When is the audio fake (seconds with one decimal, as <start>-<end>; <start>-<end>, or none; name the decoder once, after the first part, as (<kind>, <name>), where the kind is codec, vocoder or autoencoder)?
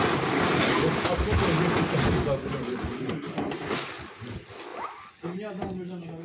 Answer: none